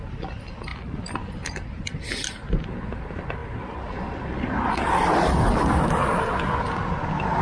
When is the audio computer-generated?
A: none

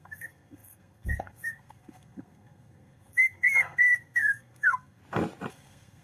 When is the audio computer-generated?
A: 0.0-5.0 (codec, SNAC); 5.5-6.0

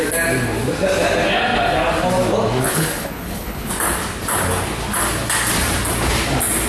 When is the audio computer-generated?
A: 2.6-3.7 (codec, HILCodec)

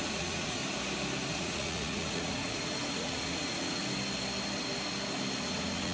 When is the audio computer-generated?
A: 0.0-0.6 (vocoder, Vocos); 1.3-3.8; 5.4-5.9

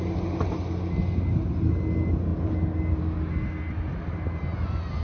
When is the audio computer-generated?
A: none

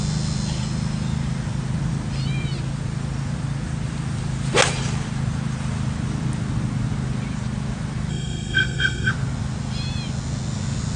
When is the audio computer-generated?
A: 8.1-9.1 (codec, SNAC)